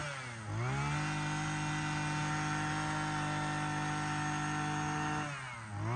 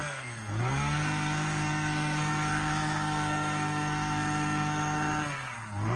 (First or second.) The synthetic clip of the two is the second